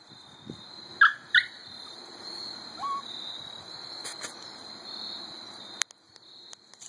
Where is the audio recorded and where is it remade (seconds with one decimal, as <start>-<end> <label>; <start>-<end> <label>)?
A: 0.0-6.9 recorded